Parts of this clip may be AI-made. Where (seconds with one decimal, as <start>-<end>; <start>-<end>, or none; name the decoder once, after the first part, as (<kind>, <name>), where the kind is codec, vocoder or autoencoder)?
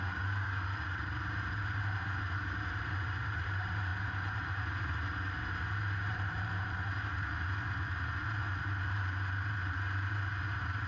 0.0-10.9 (vocoder, BigVGAN v2)